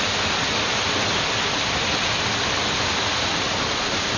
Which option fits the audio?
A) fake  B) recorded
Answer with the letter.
B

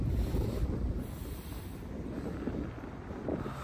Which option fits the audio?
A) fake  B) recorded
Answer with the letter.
B